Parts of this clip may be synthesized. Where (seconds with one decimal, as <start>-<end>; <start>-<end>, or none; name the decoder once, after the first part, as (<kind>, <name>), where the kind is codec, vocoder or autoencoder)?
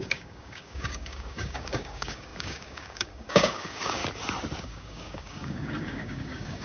0.0-4.0 (codec, DAC); 4.6-6.6